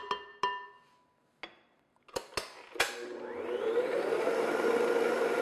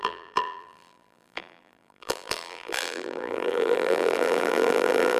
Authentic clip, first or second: first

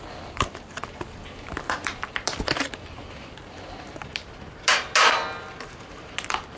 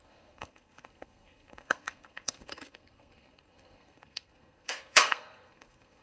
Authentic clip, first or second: first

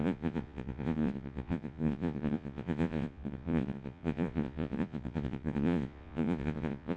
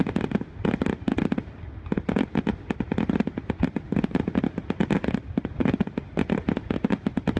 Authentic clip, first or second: second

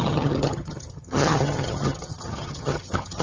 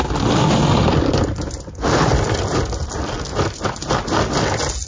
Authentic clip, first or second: second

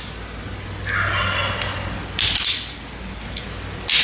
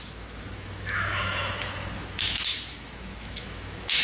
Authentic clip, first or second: first